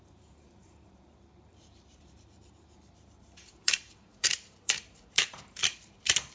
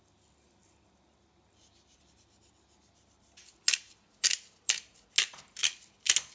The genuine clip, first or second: second